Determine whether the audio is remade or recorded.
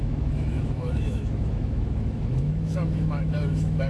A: remade